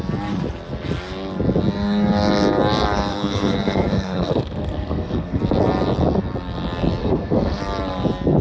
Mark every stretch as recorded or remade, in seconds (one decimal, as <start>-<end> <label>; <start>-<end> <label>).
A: 0.0-3.1 recorded; 3.1-5.4 remade; 5.4-7.0 recorded; 7.0-7.6 remade; 7.6-8.4 recorded